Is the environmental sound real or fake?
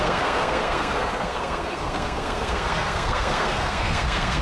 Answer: fake